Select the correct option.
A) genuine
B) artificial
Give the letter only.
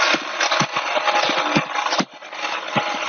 A